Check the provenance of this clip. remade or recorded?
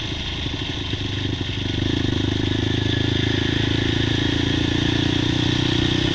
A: recorded